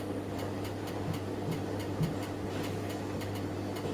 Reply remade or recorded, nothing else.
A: recorded